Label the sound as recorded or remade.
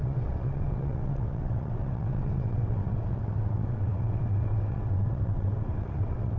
remade